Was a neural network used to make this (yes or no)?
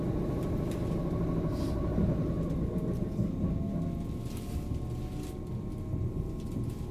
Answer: no